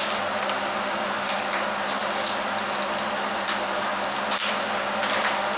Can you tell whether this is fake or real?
real